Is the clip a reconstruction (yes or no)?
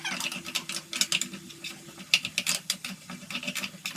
no